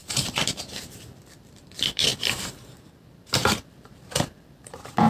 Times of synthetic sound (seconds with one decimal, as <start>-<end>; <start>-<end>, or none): 0.0-5.1